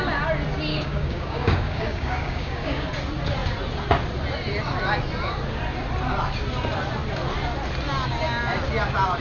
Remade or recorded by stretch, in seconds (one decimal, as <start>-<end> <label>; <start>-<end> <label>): 0.0-0.7 recorded; 0.7-2.9 remade; 2.9-9.2 recorded